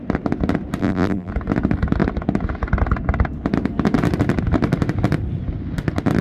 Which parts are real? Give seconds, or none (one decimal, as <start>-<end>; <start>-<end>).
0.0-0.8; 1.3-6.2